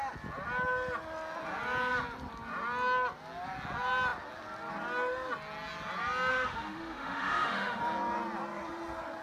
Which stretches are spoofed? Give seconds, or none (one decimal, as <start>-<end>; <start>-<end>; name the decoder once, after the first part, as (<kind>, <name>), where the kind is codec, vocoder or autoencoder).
6.3-7.8 (autoencoder, DAC-VAE)